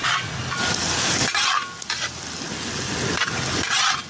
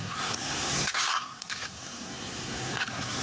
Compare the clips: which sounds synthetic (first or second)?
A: second